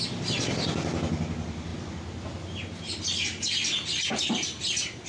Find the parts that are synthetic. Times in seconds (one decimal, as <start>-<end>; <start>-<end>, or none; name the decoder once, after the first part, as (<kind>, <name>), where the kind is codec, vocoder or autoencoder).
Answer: none

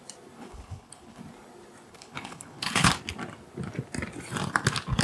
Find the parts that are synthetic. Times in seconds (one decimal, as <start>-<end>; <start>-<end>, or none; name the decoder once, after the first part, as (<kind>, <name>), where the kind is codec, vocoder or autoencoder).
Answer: 0.4-1.2 (codec, HILCodec); 1.9-2.9